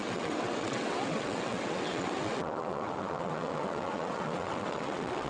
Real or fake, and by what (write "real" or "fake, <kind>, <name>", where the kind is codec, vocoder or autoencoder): fake, vocoder, WaveNeXt